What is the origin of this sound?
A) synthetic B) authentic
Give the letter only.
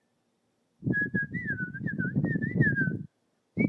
B